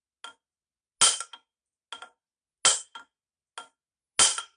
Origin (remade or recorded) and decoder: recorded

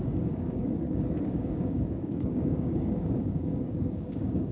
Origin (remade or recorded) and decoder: remade, codec, DAC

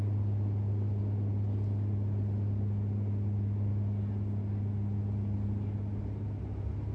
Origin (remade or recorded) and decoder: recorded